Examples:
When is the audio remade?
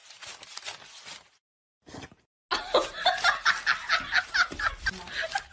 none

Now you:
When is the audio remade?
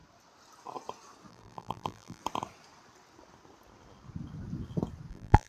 1.3-2.2 (vocoder, BigVGAN v2); 5.1-5.5